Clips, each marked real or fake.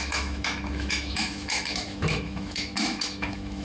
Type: fake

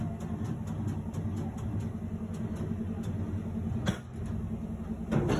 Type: real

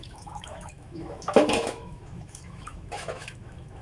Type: fake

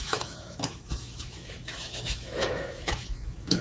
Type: fake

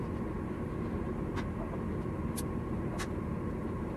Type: real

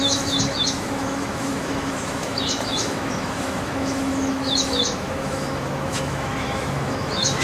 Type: fake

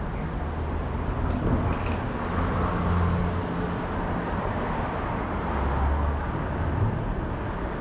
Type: real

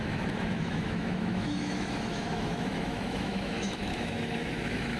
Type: fake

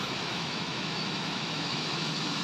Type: fake